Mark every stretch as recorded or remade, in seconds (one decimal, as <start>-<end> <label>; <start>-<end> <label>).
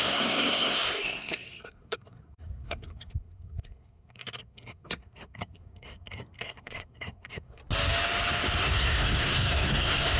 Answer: 0.0-7.6 remade; 7.6-8.6 recorded; 8.6-10.2 remade